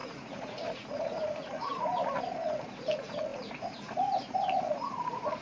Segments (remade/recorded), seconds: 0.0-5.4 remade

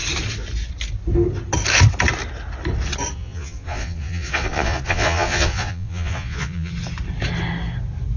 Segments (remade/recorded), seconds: 0.0-3.1 recorded; 3.1-6.7 remade; 6.7-8.2 recorded

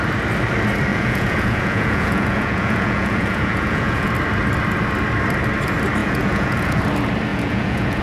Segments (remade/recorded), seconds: 0.0-0.9 recorded; 0.9-4.1 remade; 4.1-6.0 recorded; 6.0-6.8 remade; 6.8-7.3 recorded; 7.3-8.0 remade